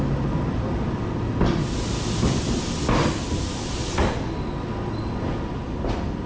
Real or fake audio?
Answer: real